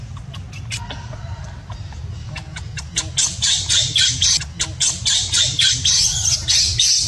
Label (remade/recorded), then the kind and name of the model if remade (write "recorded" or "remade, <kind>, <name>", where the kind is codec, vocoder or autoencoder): recorded